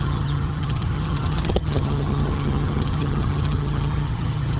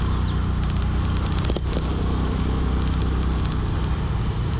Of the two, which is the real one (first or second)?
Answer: second